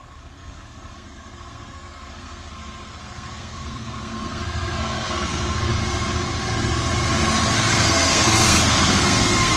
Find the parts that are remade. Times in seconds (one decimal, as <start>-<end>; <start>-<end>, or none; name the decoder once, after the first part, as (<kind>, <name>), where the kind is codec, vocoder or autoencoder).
0.0-5.7 (codec, SNAC); 7.7-9.6